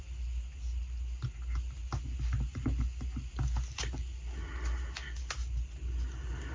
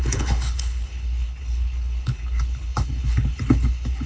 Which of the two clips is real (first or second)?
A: first